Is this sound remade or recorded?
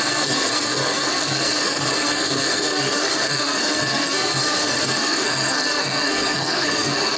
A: remade